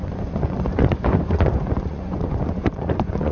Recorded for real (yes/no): no